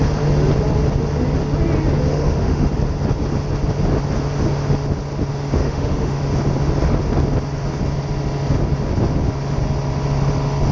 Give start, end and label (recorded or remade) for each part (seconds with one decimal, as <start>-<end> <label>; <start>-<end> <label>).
0.0-2.1 recorded; 2.1-2.7 remade; 2.7-5.6 recorded; 5.6-6.2 remade; 6.2-10.7 recorded